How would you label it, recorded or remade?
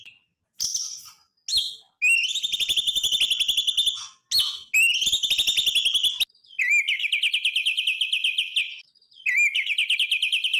recorded